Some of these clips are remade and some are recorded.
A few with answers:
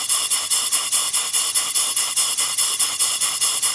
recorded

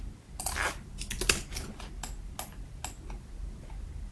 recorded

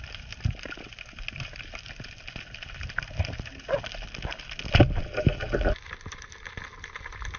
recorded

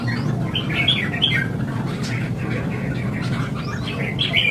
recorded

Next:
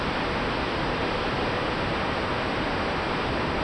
recorded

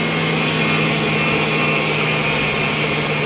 recorded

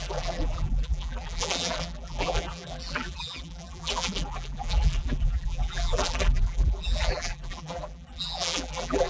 remade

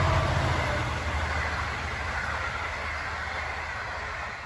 recorded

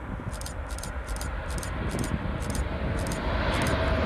recorded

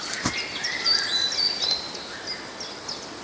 recorded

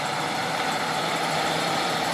recorded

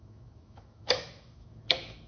remade